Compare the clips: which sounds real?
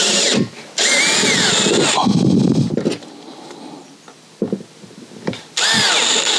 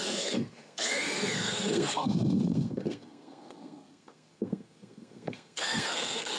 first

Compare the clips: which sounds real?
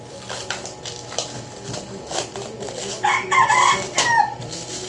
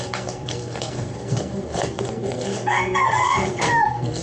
first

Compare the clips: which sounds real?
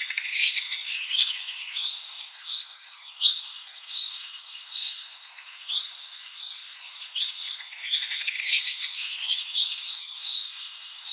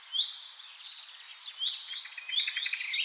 second